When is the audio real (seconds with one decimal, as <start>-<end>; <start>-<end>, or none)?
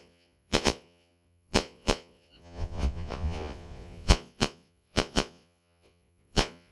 none